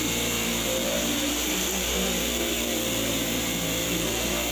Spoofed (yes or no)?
yes